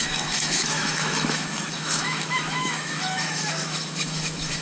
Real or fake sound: fake